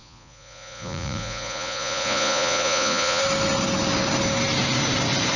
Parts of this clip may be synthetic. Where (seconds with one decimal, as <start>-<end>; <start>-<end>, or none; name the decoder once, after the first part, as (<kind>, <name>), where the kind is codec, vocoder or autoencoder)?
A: 0.0-3.2 (vocoder, Vocos)